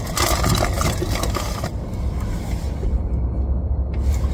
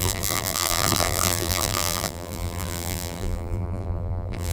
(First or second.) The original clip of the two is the first